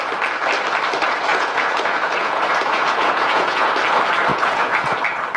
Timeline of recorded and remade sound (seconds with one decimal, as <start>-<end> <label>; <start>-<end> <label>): 0.0-1.3 recorded; 1.3-3.7 remade; 3.7-4.3 recorded; 4.3-5.0 remade; 5.0-5.4 recorded

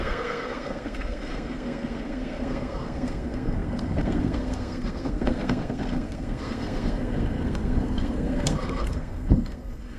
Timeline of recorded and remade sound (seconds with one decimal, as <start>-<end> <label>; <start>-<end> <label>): 0.0-10.0 remade

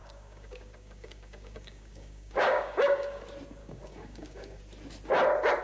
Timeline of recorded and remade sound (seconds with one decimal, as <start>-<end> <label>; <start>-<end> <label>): 0.0-3.2 remade; 3.2-3.6 recorded; 3.6-4.6 remade; 4.6-5.6 recorded